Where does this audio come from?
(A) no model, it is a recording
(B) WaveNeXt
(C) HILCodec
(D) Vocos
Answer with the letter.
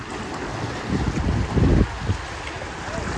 A